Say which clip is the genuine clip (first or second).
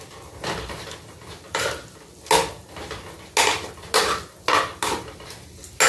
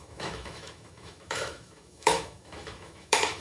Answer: first